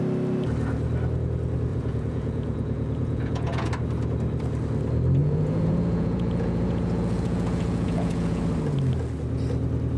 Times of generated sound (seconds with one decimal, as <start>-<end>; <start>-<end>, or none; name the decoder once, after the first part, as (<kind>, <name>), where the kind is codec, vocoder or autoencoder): 1.7-3.7 (vocoder, Vocos); 5.2-8.4